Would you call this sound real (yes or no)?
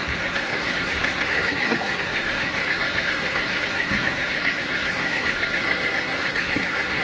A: no